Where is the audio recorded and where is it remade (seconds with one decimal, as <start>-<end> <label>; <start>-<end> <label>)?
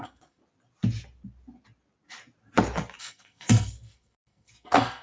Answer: 0.0-0.4 remade; 0.4-3.0 recorded; 3.0-5.0 remade